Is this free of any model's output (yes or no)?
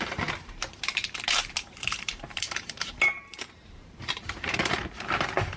no